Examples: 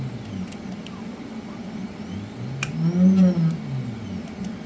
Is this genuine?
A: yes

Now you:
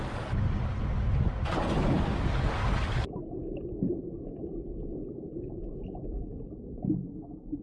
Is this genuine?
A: yes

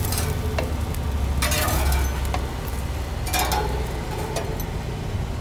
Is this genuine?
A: yes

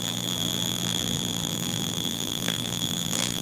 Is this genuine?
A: no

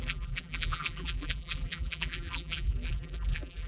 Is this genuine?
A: no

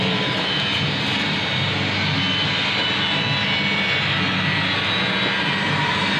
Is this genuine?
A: yes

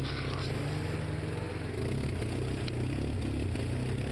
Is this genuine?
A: yes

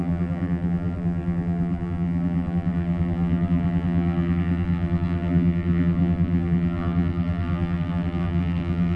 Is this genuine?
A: no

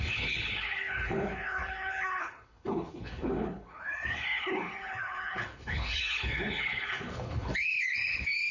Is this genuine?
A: no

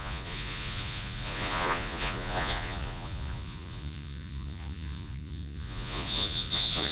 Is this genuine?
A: no